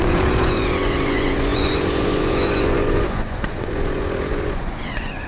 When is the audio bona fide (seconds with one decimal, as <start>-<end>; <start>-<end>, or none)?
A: none